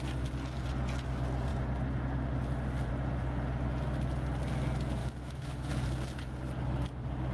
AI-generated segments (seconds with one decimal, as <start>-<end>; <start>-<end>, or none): 5.0-5.7